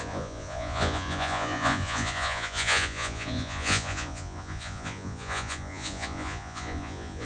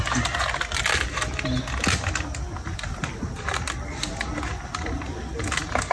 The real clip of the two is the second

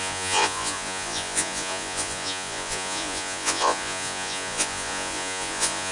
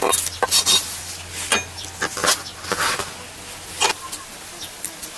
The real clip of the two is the second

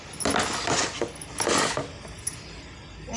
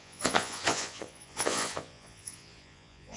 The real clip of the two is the first